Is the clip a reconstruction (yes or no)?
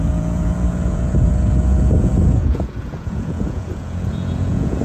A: yes